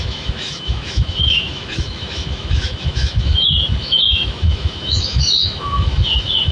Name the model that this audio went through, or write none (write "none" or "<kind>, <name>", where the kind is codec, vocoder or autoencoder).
autoencoder, DAC-VAE